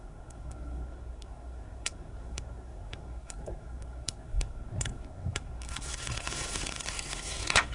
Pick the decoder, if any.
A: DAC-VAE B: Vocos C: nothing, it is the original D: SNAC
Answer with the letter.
D